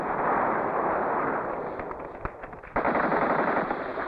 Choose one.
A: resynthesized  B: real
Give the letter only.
B